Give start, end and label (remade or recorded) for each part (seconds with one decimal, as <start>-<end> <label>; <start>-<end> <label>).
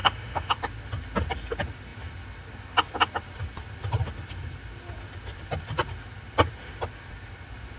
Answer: 0.0-0.5 remade; 0.5-7.8 recorded